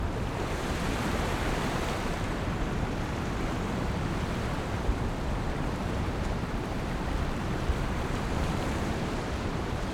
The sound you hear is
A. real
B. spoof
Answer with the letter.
B